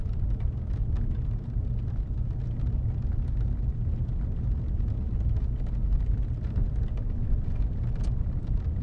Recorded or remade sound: recorded